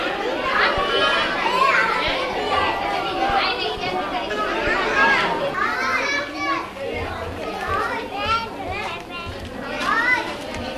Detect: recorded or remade recorded